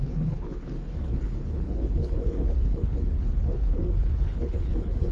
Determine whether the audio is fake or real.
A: fake